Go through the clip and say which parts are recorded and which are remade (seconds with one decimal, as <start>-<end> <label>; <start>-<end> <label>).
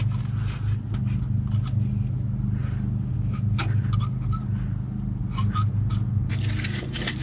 0.0-7.2 recorded